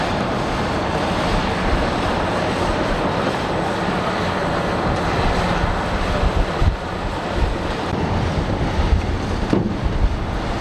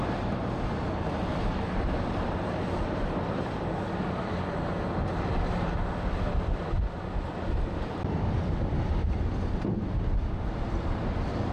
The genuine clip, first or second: second